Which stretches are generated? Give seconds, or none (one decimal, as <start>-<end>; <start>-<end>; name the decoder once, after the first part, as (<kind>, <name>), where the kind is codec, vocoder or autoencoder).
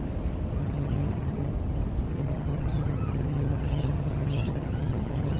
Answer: 0.6-1.5 (vocoder, HiFi-GAN); 2.1-5.4